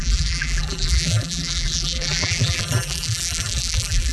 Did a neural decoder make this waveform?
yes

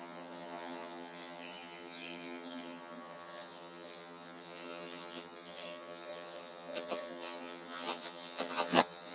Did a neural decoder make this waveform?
yes